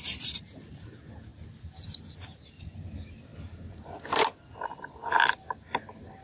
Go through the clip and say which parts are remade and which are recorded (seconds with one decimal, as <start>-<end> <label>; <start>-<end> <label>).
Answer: 0.0-6.2 recorded